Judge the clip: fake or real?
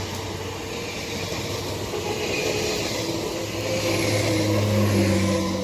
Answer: real